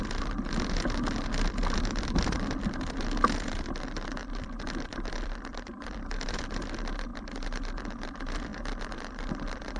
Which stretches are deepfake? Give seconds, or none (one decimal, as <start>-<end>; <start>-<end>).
4.2-5.9; 7.1-7.8